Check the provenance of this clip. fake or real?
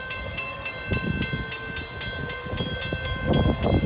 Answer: real